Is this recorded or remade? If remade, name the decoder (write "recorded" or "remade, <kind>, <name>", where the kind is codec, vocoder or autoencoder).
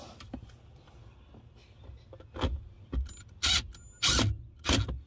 recorded